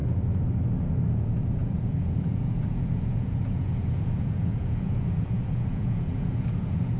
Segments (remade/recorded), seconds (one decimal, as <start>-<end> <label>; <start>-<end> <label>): 0.0-1.1 recorded; 1.1-7.0 remade